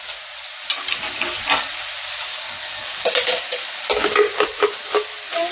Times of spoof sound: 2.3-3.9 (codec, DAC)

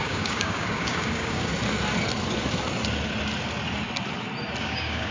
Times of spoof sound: 0.0-1.5 (codec, DAC); 4.6-5.1